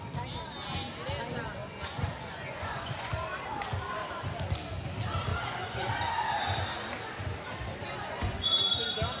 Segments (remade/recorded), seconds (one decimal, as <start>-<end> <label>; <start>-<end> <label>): 0.0-1.6 recorded; 1.6-3.1 remade; 3.1-5.3 recorded; 5.3-5.9 remade; 5.9-8.0 recorded; 8.0-8.7 remade; 8.7-9.2 recorded

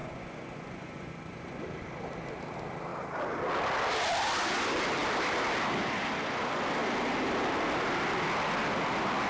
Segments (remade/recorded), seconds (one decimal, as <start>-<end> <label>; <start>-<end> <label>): 0.0-1.6 remade; 1.6-9.3 recorded